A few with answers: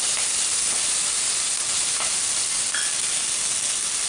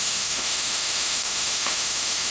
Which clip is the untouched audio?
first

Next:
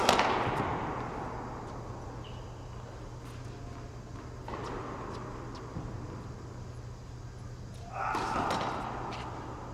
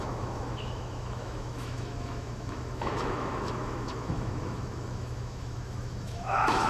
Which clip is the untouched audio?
first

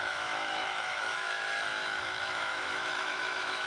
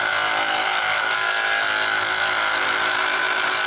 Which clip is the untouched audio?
second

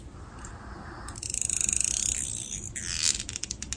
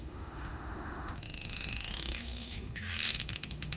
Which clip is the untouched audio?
first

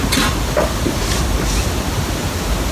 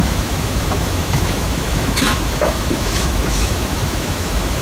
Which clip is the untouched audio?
first